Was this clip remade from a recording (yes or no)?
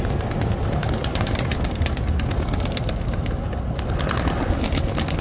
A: no